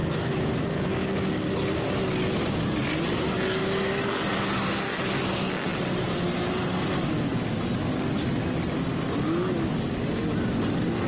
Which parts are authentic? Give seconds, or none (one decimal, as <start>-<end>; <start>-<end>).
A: 0.0-11.1